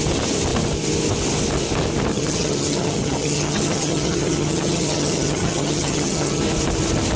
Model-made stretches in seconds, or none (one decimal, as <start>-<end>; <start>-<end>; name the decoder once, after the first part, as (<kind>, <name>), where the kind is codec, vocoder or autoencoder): 2.1-6.4 (vocoder, HiFi-GAN)